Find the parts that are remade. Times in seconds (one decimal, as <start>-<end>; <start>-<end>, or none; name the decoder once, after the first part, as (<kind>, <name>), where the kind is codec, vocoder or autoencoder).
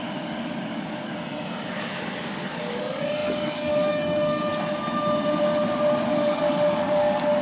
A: 0.0-1.1 (codec, DAC); 1.7-4.5; 6.1-7.4